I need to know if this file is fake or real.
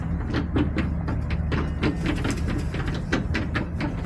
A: real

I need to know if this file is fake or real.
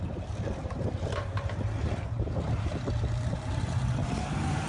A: fake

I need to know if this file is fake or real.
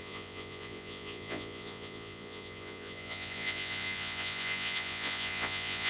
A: fake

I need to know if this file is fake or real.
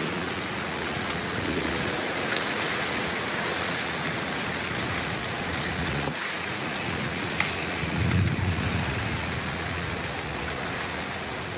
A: fake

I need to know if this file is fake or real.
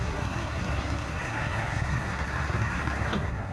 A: fake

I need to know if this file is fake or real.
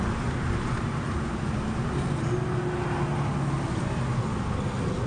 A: real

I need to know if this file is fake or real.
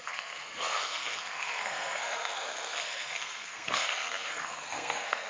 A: fake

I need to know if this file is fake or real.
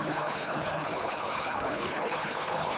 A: fake